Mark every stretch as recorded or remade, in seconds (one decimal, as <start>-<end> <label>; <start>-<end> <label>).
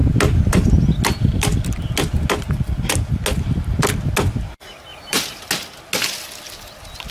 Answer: 0.0-4.9 recorded; 4.9-5.5 remade; 5.5-7.1 recorded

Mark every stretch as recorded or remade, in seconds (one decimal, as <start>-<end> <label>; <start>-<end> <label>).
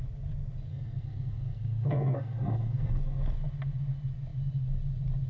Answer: 0.0-0.7 recorded; 0.7-3.2 remade; 3.2-5.3 recorded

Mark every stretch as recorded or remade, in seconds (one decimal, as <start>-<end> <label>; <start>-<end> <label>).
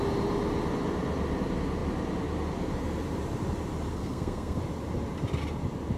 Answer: 0.0-3.9 recorded; 3.9-4.6 remade; 4.6-6.0 recorded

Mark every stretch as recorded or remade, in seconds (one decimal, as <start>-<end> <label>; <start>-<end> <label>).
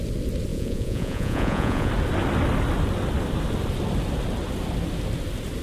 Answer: 0.0-0.5 recorded; 0.5-1.9 remade; 1.9-5.6 recorded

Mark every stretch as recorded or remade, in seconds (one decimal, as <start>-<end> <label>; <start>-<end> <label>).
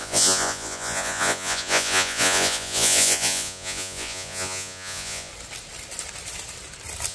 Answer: 0.0-5.3 remade; 5.3-7.1 recorded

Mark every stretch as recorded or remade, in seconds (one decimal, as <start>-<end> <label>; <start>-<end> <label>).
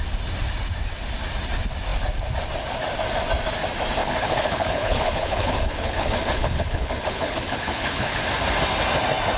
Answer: 0.0-4.0 recorded; 4.0-8.2 remade; 8.2-9.4 recorded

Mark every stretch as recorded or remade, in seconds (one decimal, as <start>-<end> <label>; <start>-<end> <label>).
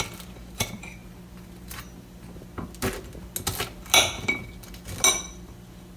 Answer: 0.0-6.0 recorded